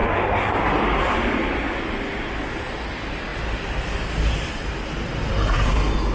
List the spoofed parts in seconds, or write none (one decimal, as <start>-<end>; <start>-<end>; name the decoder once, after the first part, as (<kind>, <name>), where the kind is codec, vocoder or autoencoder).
none